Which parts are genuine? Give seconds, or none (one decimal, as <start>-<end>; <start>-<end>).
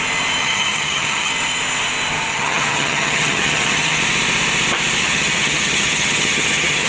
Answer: 0.0-0.4; 1.3-2.3; 4.0-5.0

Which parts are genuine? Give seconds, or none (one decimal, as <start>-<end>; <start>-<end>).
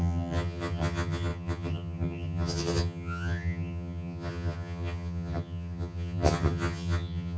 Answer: none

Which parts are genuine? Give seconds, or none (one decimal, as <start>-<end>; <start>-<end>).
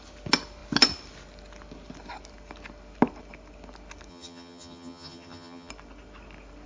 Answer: 0.0-4.1; 5.7-6.7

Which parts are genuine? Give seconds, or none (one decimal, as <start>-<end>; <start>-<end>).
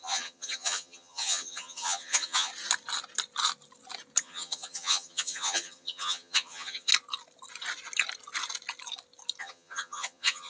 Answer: 2.5-4.2; 6.9-9.4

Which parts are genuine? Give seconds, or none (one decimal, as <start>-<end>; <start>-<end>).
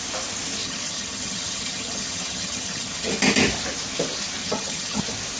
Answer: 0.0-0.6; 3.1-4.4; 5.0-5.4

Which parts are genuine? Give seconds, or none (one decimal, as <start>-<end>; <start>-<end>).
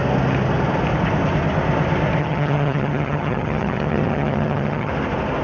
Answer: 0.0-2.2; 4.9-5.4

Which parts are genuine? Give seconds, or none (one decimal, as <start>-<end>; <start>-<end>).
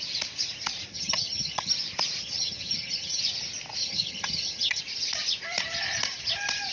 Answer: 0.0-0.9; 1.7-2.2; 3.2-3.8; 4.8-6.7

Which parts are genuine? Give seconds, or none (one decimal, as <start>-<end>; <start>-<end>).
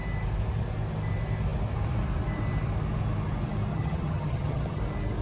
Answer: 0.0-3.7; 4.8-5.2